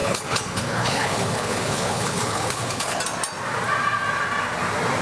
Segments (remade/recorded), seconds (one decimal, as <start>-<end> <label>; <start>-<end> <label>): 0.0-3.0 remade; 3.0-5.0 recorded

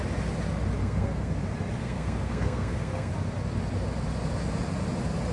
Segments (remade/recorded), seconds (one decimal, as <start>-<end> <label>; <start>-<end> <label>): 0.0-0.8 recorded; 0.8-1.3 remade; 1.3-1.8 recorded; 1.8-3.1 remade; 3.1-5.3 recorded

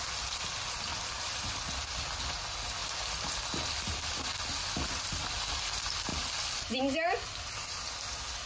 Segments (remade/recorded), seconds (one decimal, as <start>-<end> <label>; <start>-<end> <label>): 0.0-0.9 recorded; 0.9-1.6 remade; 1.6-2.8 recorded; 2.8-3.3 remade; 3.3-6.1 recorded; 6.1-6.7 remade; 6.7-8.5 recorded

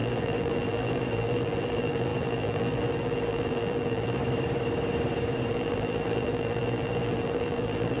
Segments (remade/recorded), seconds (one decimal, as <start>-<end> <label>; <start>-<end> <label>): 0.0-4.2 remade; 4.2-5.5 recorded; 5.5-8.0 remade

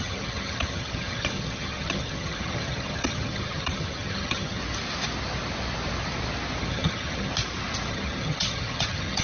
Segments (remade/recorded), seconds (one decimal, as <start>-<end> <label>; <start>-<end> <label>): 0.0-4.6 remade; 4.6-6.6 recorded; 6.6-7.3 remade; 7.3-7.9 recorded; 7.9-9.2 remade

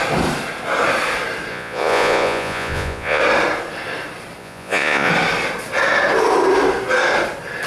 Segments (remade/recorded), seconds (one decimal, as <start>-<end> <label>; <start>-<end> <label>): 0.0-1.5 recorded; 1.5-3.2 remade; 3.2-4.4 recorded; 4.4-5.1 remade; 5.1-7.7 recorded

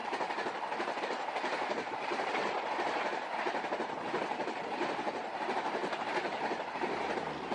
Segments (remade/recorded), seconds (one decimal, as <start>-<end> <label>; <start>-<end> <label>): 0.0-5.8 remade; 5.8-6.6 recorded; 6.6-7.5 remade

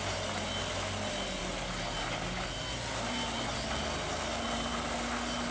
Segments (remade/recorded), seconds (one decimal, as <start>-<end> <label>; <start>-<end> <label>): 0.0-5.5 recorded